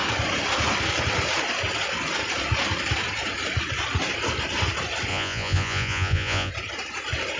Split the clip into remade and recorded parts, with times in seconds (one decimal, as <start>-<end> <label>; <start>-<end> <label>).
0.0-5.1 recorded; 5.1-6.5 remade; 6.5-7.4 recorded